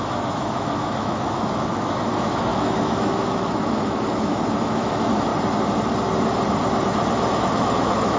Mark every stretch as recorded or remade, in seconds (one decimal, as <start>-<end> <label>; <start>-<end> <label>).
0.0-5.3 remade; 5.3-7.4 recorded; 7.4-8.2 remade